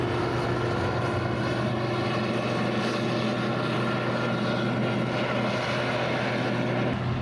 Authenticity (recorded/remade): recorded